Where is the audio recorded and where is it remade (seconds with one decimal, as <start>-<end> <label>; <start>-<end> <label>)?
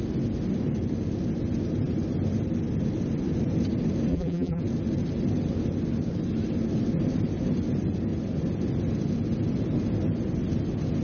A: 0.0-4.1 recorded; 4.1-4.6 remade; 4.6-11.0 recorded